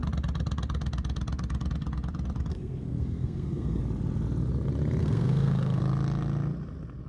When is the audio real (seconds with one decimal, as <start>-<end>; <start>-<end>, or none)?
0.0-2.5; 3.8-5.0; 5.8-7.1